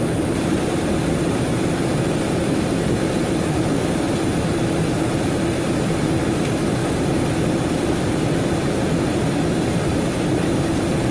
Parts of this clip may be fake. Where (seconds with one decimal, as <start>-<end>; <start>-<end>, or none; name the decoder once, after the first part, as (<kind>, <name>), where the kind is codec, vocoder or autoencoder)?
0.0-6.8 (vocoder, BigVGAN v2); 7.5-11.1